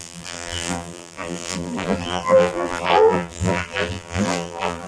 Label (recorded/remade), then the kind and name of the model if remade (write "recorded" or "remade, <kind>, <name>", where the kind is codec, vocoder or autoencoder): remade, vocoder, BigVGAN v2